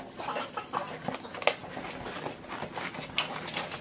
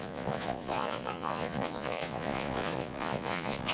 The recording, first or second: first